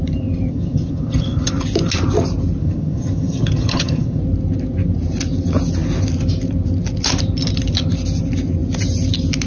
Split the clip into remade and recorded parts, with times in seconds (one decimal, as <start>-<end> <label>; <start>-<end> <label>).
0.0-0.5 recorded; 0.5-1.5 remade; 1.5-2.6 recorded; 2.6-4.2 remade; 4.2-9.5 recorded